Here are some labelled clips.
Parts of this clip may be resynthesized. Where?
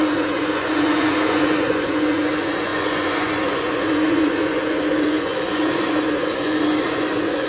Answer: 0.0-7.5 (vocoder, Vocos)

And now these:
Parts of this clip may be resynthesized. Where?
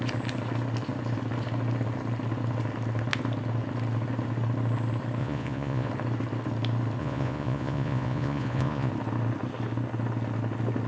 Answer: 5.2-5.9 (vocoder, Vocos); 7.0-8.9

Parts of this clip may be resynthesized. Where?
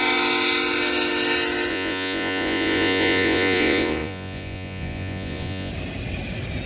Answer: 1.7-5.7 (vocoder, Vocos)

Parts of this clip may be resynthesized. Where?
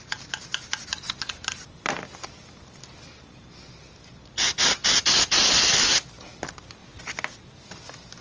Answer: none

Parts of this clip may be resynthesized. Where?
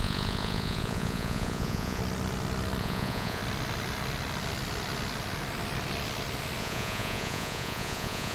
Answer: 0.0-2.0 (vocoder, Vocos); 2.8-3.4; 6.6-8.3